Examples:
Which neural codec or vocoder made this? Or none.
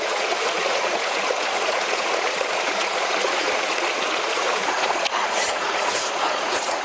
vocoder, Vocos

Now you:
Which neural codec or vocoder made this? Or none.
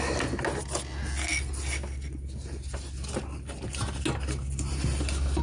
none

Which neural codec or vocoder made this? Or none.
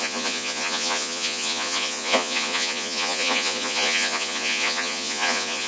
vocoder, Vocos